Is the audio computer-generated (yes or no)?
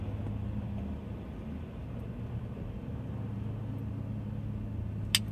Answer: no